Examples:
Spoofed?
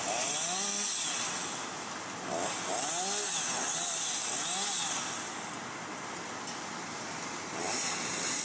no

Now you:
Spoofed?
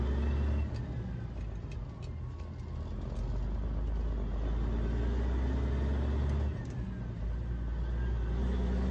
no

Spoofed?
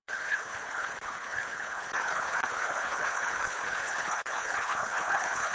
yes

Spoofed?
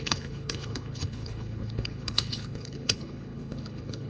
yes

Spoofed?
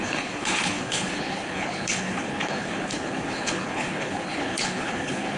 yes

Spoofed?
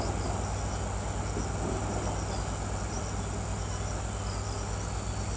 no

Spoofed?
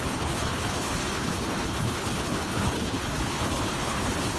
yes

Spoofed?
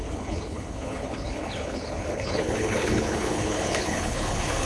yes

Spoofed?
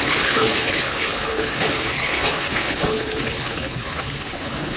yes